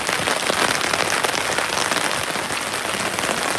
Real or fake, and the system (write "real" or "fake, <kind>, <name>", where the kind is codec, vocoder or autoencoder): real